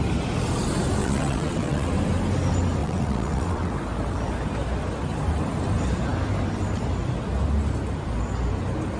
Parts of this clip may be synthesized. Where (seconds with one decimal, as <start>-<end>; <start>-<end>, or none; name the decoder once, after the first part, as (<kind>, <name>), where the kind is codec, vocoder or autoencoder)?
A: 1.0-1.9 (vocoder, WaveNeXt); 2.8-3.7